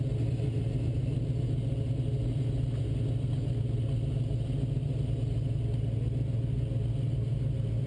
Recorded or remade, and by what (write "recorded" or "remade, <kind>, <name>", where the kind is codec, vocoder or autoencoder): recorded